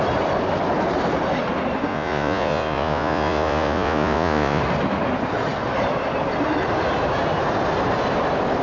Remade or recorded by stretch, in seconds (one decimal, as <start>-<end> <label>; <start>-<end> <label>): 0.0-1.9 recorded; 1.9-4.6 remade; 4.6-8.6 recorded